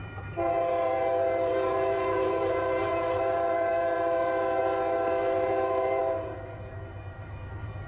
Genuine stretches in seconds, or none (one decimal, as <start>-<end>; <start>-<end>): none